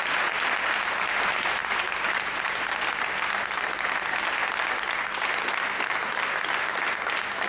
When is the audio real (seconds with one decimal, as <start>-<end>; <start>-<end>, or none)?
0.0-7.5